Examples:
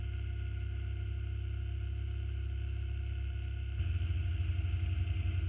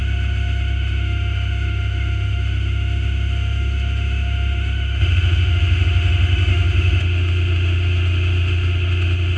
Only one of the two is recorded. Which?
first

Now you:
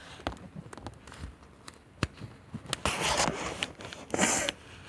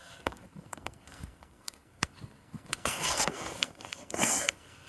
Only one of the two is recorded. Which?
first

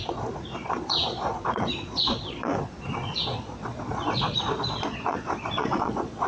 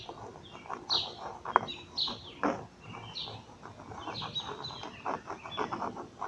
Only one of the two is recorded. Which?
second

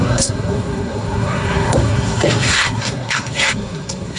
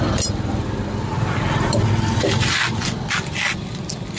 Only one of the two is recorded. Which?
second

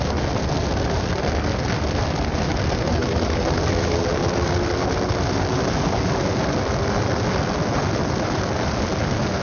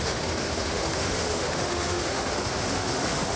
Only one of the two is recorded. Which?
first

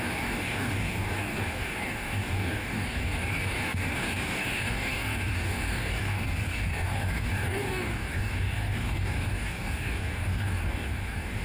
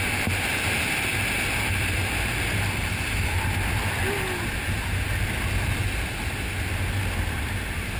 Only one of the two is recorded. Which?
second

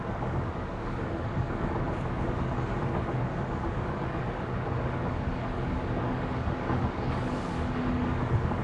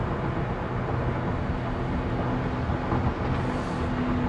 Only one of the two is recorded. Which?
second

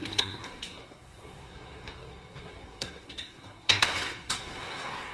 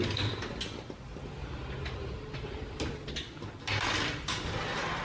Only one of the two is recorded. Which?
second